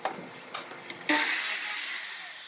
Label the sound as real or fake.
real